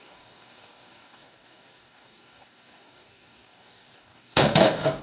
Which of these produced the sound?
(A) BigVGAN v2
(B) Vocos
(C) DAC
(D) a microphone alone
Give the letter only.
C